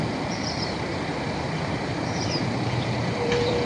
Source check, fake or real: fake